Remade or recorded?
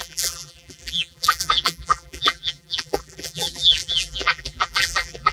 remade